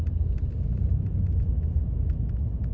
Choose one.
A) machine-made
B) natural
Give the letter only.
B